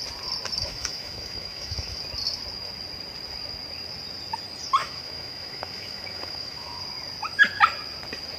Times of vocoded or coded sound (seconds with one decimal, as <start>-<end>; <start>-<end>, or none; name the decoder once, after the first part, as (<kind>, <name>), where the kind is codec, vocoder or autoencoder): 0.6-2.0 (autoencoder, DAC-VAE); 4.8-6.8